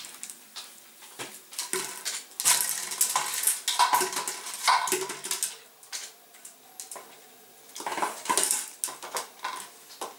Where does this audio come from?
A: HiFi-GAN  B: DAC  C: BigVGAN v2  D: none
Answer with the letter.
D